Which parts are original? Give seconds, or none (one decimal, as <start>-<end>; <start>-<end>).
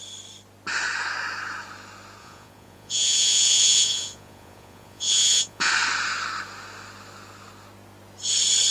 0.0-2.2; 5.7-8.7